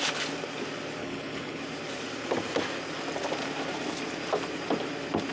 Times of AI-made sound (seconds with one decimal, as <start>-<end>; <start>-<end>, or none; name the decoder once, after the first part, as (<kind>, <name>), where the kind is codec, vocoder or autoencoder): 1.0-1.6 (codec, HILCodec)